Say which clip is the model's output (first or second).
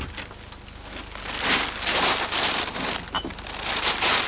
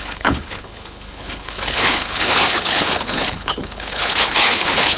second